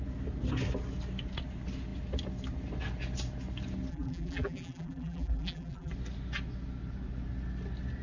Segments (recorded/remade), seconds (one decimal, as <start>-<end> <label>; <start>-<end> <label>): 0.0-3.9 recorded; 3.9-5.9 remade; 5.9-8.0 recorded